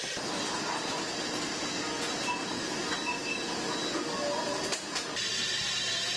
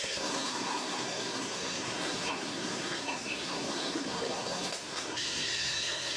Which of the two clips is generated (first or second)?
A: second